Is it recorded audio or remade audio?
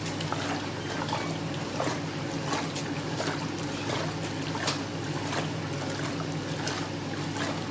recorded